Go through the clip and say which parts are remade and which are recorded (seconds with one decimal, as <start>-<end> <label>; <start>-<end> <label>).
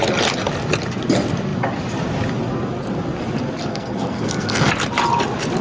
0.0-3.7 recorded; 3.7-4.7 remade; 4.7-5.6 recorded